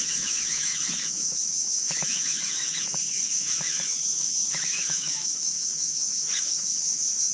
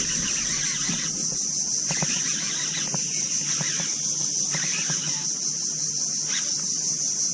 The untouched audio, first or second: second